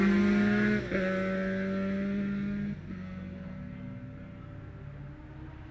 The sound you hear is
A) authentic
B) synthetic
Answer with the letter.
A